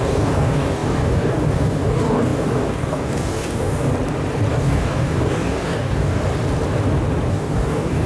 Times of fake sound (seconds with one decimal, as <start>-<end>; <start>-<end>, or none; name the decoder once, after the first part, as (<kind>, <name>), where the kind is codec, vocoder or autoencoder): 0.0-3.9 (codec, DAC); 4.5-6.2; 7.3-8.1